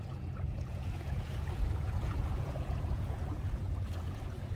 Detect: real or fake fake